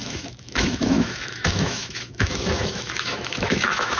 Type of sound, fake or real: fake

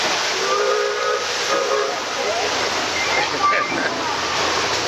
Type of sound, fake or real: fake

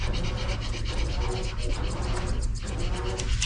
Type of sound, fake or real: real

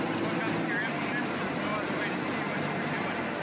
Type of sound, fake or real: real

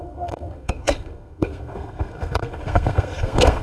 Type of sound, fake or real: fake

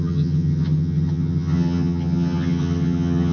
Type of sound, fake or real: fake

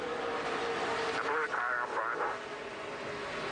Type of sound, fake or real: real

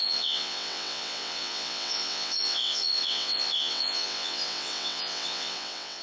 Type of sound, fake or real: fake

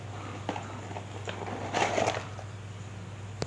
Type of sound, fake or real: real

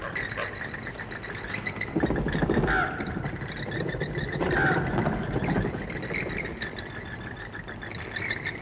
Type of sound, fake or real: real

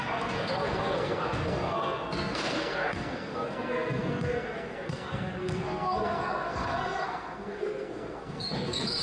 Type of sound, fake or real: fake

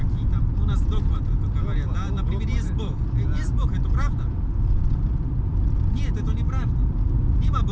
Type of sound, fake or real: real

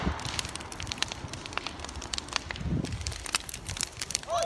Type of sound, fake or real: fake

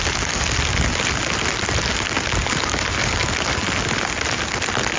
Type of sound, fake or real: real